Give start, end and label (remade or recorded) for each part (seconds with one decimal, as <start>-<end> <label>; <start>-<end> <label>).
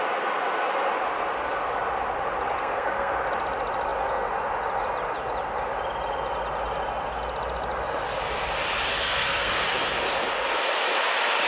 0.0-2.6 recorded; 2.6-3.1 remade; 3.1-8.9 recorded; 8.9-9.5 remade; 9.5-11.5 recorded